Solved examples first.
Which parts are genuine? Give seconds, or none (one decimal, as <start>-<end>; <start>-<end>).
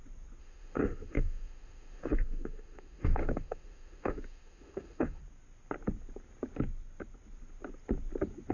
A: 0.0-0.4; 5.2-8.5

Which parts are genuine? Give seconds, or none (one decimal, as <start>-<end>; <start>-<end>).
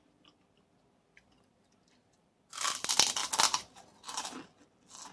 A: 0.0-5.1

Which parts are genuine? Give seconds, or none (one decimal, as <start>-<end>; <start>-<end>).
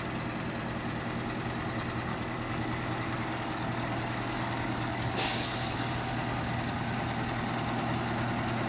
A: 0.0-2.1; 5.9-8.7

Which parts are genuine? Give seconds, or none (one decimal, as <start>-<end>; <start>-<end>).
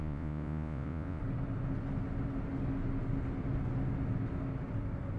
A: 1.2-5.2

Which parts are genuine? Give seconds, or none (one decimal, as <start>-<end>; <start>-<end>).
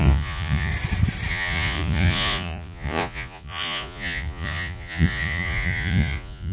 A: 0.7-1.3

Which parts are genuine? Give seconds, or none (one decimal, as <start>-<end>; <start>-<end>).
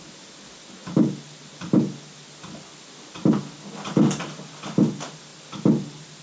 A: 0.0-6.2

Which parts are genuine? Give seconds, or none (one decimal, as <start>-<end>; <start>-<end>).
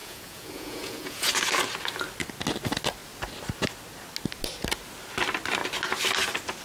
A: 1.3-6.6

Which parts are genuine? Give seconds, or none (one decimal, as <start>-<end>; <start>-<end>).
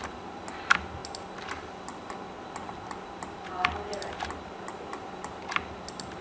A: 0.0-6.2